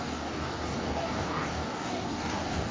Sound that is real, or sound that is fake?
fake